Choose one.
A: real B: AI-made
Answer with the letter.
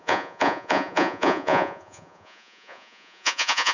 B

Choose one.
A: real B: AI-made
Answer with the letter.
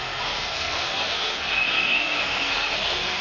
B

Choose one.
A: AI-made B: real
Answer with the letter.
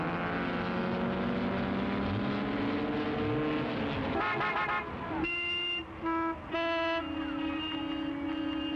B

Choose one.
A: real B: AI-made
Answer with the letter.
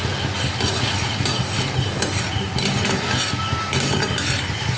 A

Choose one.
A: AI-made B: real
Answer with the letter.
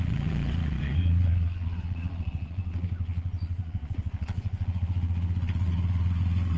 A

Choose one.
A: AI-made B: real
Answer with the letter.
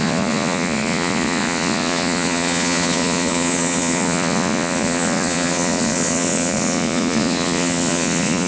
A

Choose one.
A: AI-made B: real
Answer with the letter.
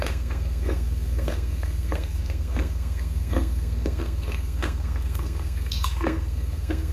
A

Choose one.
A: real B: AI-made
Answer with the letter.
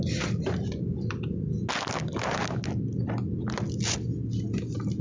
A